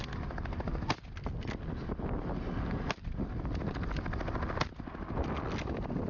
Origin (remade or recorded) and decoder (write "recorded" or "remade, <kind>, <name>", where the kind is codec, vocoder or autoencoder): recorded